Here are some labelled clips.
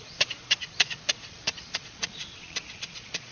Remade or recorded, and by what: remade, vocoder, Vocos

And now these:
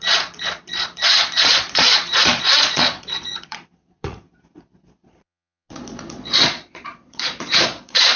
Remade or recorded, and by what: remade, vocoder, Vocos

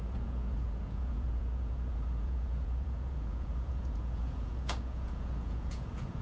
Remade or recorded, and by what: remade, vocoder, Vocos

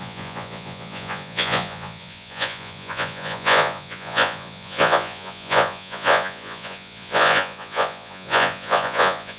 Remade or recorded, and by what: remade, vocoder, Vocos